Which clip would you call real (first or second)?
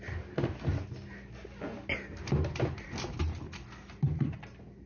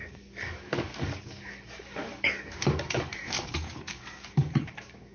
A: first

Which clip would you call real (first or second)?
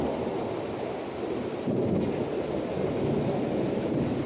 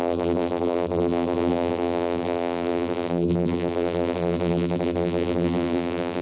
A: first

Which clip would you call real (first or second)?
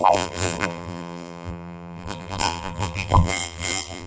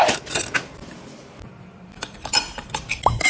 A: second